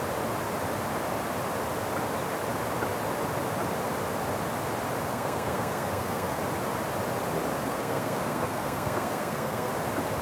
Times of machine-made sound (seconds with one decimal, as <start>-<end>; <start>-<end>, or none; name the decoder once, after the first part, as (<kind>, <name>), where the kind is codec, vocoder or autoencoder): 5.1-6.4 (codec, SNAC); 7.6-9.7